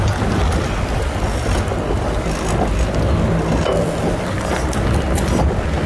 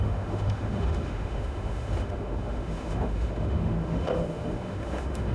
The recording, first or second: first